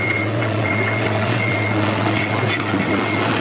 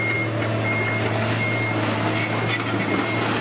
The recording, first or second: second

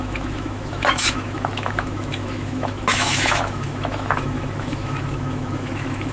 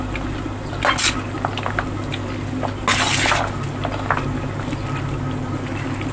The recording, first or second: second